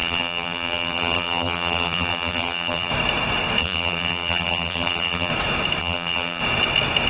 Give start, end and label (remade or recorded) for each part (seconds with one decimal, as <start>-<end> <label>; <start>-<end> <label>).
0.0-2.9 remade; 2.9-3.6 recorded; 3.6-5.3 remade; 5.3-5.8 recorded; 5.8-6.4 remade; 6.4-7.1 recorded